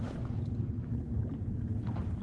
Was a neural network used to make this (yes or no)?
no